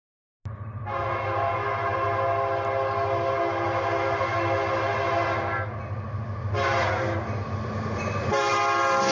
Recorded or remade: recorded